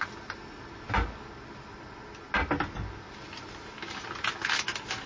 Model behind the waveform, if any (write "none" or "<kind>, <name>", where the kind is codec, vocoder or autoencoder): none